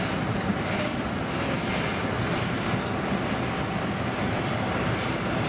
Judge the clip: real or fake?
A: real